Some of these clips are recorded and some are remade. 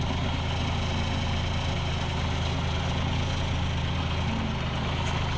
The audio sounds recorded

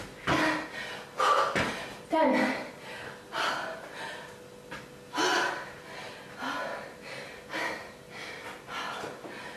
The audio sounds recorded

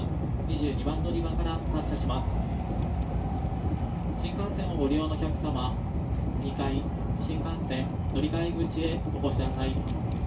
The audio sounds recorded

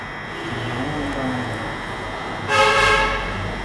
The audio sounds recorded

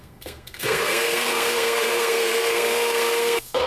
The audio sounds remade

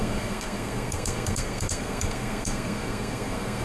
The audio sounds remade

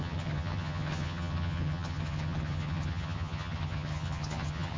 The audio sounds remade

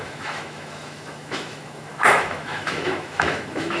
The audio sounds remade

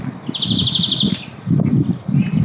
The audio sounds recorded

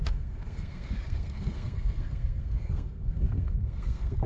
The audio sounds remade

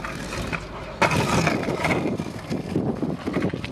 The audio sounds recorded